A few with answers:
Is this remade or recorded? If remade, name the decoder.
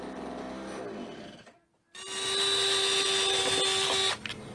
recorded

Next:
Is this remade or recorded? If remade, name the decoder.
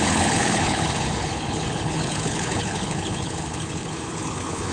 remade, codec, HILCodec